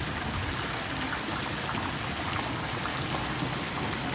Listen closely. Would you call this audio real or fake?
real